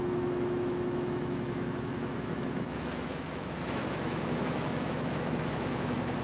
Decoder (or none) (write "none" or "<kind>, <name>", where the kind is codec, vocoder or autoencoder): autoencoder, DAC-VAE